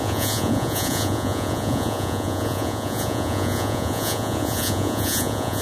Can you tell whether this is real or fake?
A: fake